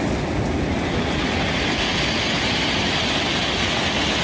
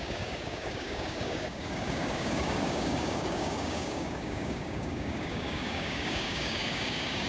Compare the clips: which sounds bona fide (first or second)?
first